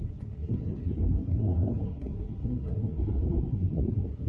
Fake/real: fake